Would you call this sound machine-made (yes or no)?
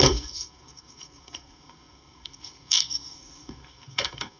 yes